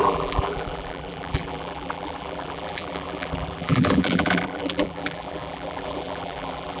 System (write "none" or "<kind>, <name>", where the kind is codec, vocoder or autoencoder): vocoder, BigVGAN v2